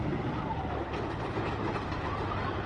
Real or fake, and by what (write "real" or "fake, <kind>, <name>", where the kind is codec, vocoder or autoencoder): real